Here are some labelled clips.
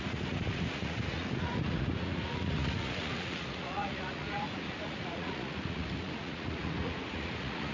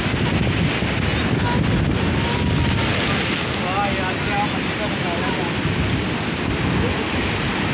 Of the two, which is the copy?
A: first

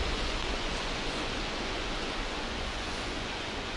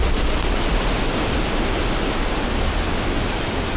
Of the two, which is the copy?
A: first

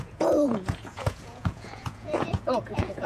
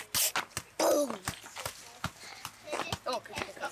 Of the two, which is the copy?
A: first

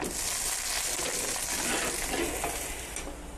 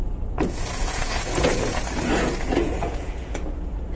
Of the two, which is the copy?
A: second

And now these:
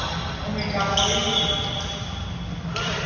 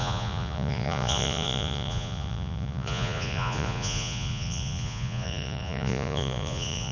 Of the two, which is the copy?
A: second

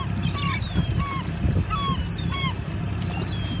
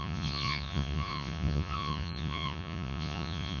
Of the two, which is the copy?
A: second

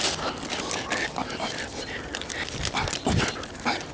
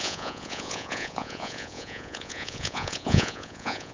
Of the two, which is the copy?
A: second